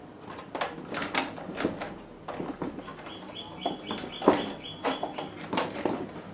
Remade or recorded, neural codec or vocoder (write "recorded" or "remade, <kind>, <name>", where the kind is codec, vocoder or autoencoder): recorded